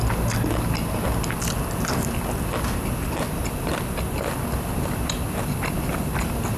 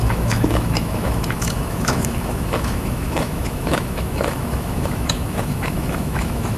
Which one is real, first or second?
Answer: first